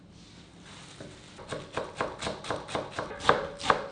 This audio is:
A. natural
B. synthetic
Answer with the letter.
A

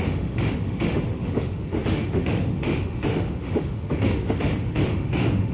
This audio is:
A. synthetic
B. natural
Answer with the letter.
A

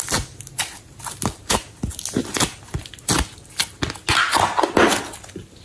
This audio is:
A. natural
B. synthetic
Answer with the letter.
A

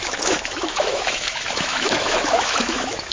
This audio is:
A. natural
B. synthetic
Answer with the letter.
B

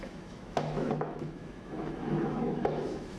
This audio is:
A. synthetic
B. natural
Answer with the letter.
A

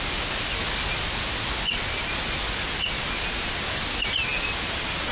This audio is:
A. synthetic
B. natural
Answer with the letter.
B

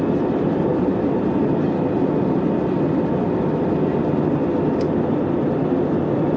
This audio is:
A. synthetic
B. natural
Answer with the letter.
B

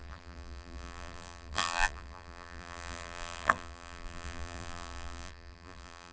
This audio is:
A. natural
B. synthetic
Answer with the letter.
B